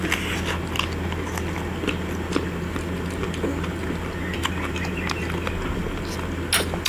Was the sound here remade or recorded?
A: recorded